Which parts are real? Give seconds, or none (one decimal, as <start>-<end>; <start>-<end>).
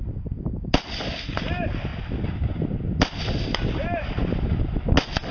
0.0-3.5; 4.6-5.3